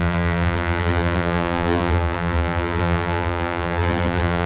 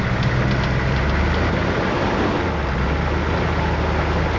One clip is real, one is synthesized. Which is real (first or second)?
second